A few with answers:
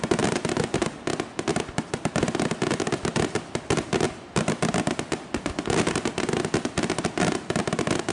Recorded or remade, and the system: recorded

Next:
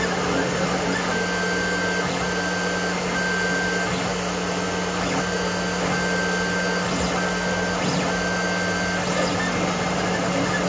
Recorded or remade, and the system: recorded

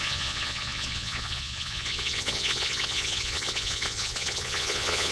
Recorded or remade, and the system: remade, vocoder, Vocos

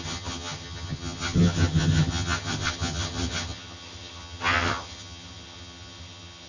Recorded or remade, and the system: remade, vocoder, HiFi-GAN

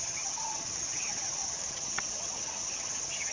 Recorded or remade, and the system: remade, vocoder, HiFi-GAN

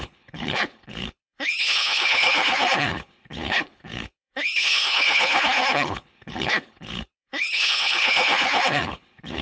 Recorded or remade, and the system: remade, codec, HILCodec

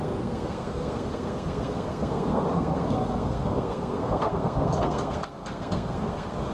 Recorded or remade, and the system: remade, codec, SNAC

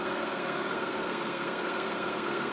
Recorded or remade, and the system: remade, codec, SNAC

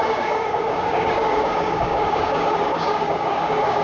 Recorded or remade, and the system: remade, codec, DAC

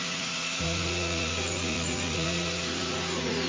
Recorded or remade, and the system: remade, vocoder, Vocos